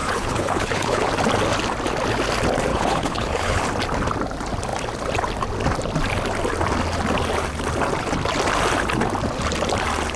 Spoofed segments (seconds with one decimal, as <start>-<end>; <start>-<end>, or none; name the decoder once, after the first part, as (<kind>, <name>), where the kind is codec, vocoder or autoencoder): 0.0-1.1 (codec, HILCodec); 2.7-3.6